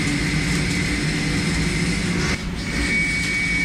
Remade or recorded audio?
recorded